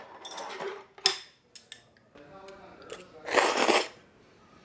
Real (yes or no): yes